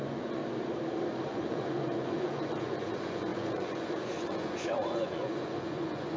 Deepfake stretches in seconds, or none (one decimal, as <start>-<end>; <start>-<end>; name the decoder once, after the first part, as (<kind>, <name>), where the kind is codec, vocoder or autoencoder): 0.0-0.4 (vocoder, Vocos); 1.3-6.2

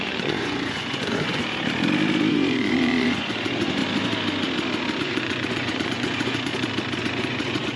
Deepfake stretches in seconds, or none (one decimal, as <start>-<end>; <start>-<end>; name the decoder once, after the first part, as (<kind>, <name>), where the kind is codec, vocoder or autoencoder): 0.0-1.4 (vocoder, Vocos); 2.3-3.8; 5.0-6.5; 7.0-7.8